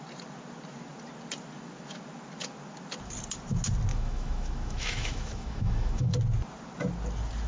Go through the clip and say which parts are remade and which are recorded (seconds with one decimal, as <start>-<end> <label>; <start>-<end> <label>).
0.0-3.9 recorded; 3.9-6.1 remade; 6.1-7.5 recorded

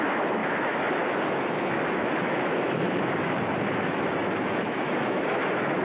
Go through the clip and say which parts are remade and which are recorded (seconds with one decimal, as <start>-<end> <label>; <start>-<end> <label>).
0.0-5.8 remade

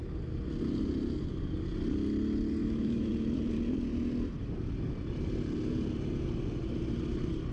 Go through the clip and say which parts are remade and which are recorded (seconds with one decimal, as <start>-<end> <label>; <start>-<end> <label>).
0.0-2.6 recorded; 2.6-3.1 remade; 3.1-7.5 recorded

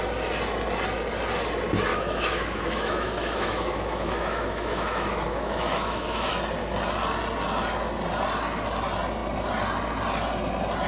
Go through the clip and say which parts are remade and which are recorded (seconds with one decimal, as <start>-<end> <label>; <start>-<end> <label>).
0.0-1.9 recorded; 1.9-6.3 remade; 6.3-10.9 recorded

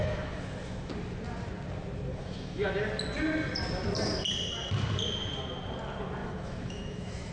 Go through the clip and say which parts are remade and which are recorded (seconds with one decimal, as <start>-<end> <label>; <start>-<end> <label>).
0.0-0.9 remade; 0.9-2.1 recorded; 2.1-2.7 remade; 2.7-6.2 recorded; 6.2-7.3 remade

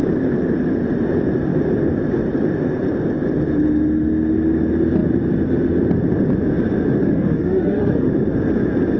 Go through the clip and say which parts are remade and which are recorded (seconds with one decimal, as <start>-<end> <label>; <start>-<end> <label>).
0.0-7.0 recorded; 7.0-8.1 remade; 8.1-9.0 recorded